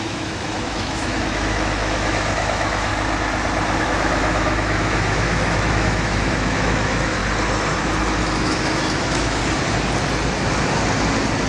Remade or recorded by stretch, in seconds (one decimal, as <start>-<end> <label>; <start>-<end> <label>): 0.0-2.9 remade; 2.9-3.8 recorded; 3.8-7.2 remade; 7.2-8.2 recorded; 8.2-9.4 remade; 9.4-11.5 recorded